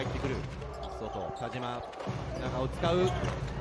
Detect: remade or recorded recorded